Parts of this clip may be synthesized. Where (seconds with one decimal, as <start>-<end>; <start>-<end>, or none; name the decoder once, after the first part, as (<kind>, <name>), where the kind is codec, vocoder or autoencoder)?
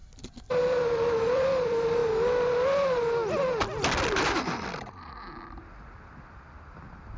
0.0-2.0 (vocoder, BigVGAN v2); 3.9-7.2